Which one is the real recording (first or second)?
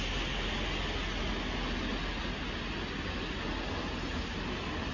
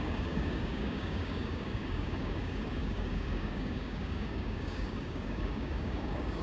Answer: first